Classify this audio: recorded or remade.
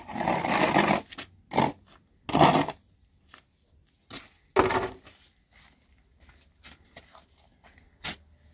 recorded